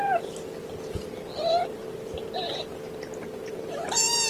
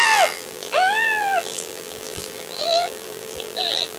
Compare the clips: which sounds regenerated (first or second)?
second